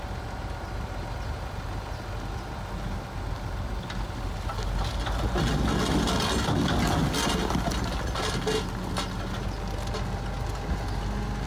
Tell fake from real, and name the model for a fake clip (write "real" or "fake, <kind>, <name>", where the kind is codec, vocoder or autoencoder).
real